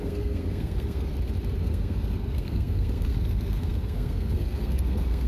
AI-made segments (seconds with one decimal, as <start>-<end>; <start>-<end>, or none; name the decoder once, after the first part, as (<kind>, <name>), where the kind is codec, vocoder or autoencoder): 0.0-1.1 (codec, SNAC); 1.6-5.3